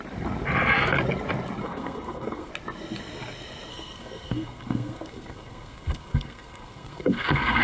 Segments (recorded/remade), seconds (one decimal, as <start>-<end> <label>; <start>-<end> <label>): 0.0-1.6 recorded; 1.6-2.5 remade; 2.5-3.7 recorded; 3.7-7.6 remade

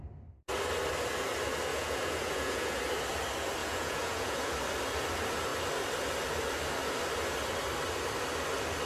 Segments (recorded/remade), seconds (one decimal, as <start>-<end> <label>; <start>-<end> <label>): 0.0-1.7 recorded; 1.7-2.8 remade; 2.8-3.6 recorded; 3.6-4.5 remade; 4.5-8.9 recorded

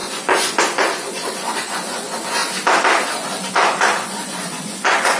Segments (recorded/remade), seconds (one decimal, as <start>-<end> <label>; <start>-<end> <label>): 0.0-2.4 remade; 2.4-3.5 recorded; 3.5-5.2 remade

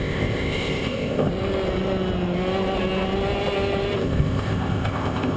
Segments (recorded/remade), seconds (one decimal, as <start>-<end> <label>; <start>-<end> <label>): 0.0-1.3 remade; 1.3-4.0 recorded; 4.0-5.4 remade

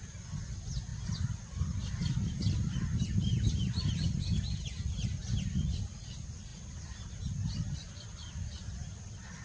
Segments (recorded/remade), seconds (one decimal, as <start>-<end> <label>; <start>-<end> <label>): 0.0-9.4 recorded